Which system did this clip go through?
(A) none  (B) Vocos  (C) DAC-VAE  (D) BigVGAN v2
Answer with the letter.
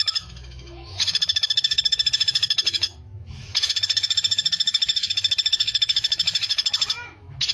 C